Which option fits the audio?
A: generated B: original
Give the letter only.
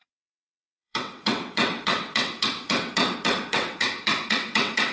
A